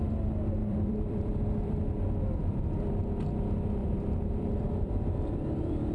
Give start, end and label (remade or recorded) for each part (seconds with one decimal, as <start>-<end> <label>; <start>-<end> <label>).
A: 0.0-0.6 recorded; 0.6-1.8 remade; 1.8-3.8 recorded; 3.8-5.9 remade